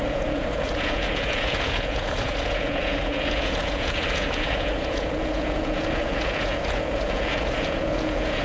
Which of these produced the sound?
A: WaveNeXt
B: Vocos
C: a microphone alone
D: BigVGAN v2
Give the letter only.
B